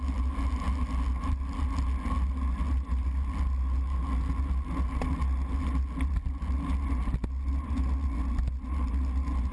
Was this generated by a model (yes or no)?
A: no